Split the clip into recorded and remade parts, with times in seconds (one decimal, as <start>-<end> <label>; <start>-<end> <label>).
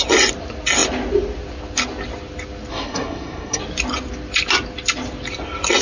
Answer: 0.0-2.7 recorded; 2.7-3.6 remade; 3.6-5.8 recorded